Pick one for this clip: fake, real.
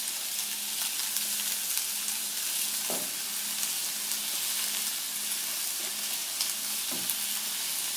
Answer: real